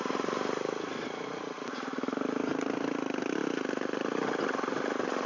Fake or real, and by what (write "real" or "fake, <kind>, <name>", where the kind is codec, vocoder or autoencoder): real